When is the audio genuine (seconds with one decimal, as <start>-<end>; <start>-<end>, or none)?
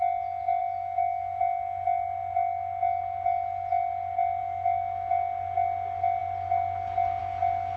0.0-0.6; 1.4-4.4; 5.1-7.8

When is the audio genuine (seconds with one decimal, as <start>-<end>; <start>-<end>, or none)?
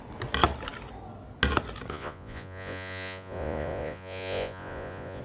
0.0-1.9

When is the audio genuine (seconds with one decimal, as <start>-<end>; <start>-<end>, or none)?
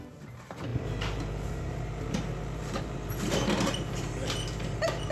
none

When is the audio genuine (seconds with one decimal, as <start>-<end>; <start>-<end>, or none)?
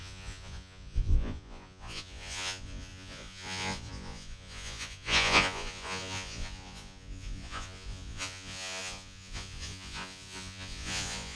none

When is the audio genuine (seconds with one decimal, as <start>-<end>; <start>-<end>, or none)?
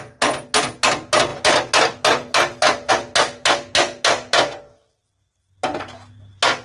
0.0-6.6